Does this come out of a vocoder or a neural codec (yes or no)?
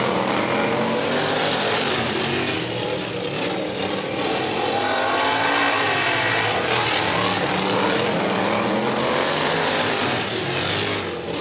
no